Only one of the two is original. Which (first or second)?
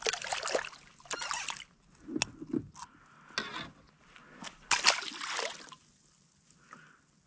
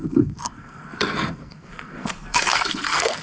first